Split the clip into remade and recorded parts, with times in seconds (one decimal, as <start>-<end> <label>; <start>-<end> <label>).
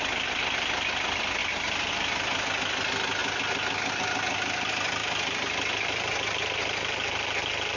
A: 0.0-7.8 recorded